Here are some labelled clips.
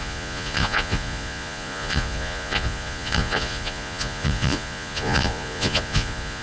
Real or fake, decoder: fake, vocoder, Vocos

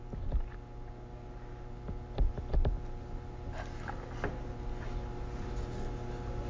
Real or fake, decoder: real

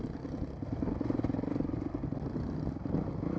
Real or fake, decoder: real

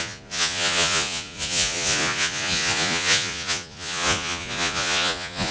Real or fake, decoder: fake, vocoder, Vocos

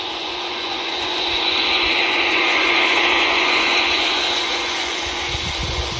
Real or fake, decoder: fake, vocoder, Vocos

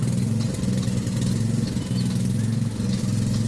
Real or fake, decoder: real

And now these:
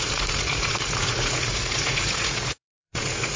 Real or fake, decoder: fake, vocoder, Vocos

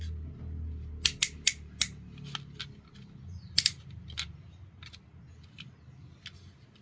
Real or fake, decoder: real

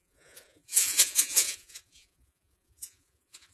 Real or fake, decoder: fake, vocoder, Vocos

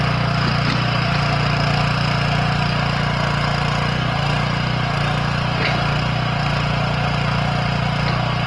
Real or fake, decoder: real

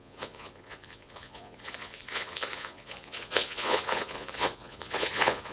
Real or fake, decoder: fake, vocoder, Vocos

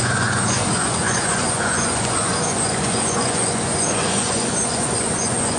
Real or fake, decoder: fake, vocoder, Vocos